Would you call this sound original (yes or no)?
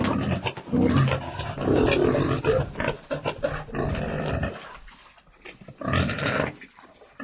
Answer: yes